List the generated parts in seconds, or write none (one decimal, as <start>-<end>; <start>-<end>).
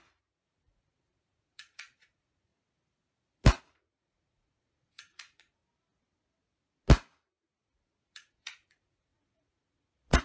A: 0.0-2.5; 3.6-5.6; 8.0-10.2